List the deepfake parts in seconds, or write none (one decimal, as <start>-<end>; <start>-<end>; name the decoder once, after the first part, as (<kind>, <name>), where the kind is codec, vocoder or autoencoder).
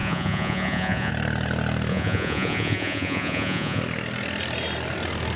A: 0.0-1.1 (vocoder, Vocos); 1.9-3.8